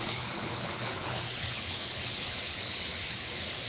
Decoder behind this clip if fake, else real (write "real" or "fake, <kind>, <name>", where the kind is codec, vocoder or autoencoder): fake, codec, HILCodec